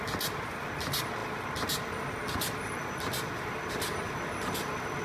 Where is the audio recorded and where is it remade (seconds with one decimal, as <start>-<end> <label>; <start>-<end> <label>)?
0.0-5.0 recorded